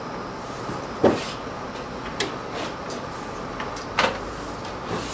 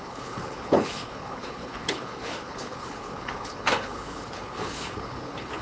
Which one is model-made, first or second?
second